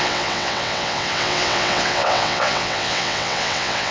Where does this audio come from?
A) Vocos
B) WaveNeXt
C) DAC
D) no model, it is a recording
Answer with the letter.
B